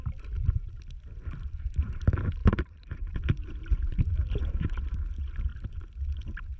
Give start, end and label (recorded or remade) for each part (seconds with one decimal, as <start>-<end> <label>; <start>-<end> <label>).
0.0-2.4 recorded; 2.4-4.9 remade; 4.9-6.6 recorded